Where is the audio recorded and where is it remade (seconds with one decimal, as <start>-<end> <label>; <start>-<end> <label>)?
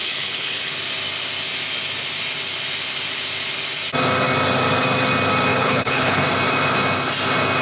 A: 0.0-0.7 remade; 0.7-5.5 recorded; 5.5-6.2 remade; 6.2-7.6 recorded